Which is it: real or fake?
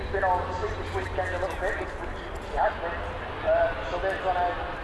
real